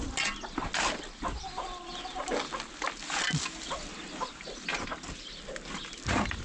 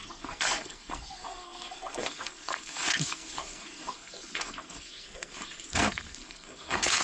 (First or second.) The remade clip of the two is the second